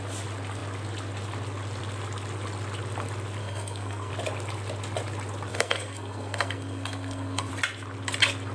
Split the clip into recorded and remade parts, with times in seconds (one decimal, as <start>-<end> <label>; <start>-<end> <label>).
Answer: 0.0-3.4 recorded; 3.4-4.1 remade; 4.1-5.5 recorded; 5.5-7.5 remade; 7.5-8.5 recorded